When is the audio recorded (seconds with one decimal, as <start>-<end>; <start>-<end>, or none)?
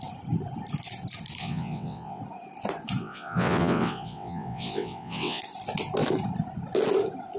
0.0-1.4; 2.2-3.0; 5.4-7.4